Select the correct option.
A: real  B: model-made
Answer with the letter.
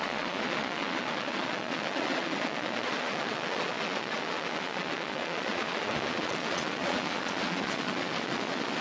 B